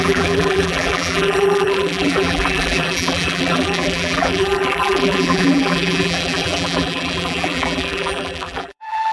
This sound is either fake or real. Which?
fake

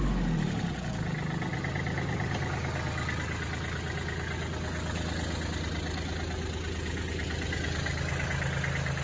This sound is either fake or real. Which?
real